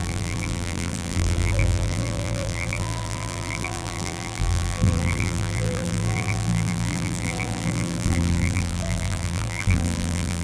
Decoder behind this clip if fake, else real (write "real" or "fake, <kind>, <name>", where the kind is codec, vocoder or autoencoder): fake, vocoder, BigVGAN v2